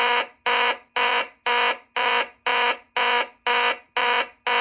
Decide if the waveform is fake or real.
real